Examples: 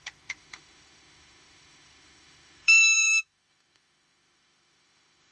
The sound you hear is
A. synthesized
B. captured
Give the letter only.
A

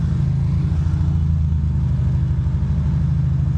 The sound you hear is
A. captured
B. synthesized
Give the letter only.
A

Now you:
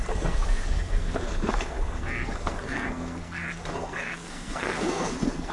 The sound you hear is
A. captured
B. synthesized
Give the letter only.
B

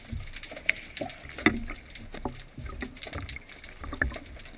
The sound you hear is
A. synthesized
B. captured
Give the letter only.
B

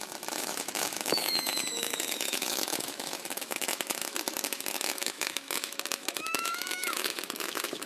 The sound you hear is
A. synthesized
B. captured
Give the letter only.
A